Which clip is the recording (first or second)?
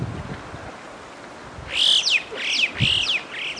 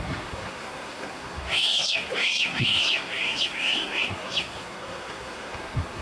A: first